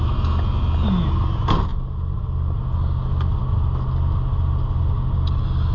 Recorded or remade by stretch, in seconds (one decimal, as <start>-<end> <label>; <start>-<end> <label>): 0.0-5.7 recorded